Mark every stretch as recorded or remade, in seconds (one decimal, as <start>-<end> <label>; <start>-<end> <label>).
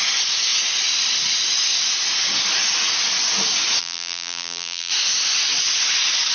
0.0-3.8 recorded; 3.8-4.9 remade; 4.9-6.3 recorded